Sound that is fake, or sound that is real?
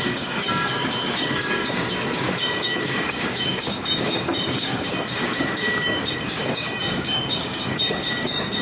fake